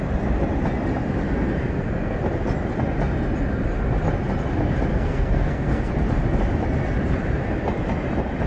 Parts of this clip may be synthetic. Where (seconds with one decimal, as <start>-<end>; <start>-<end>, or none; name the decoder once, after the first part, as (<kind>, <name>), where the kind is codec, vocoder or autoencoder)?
1.6-2.2 (codec, SNAC); 4.9-5.9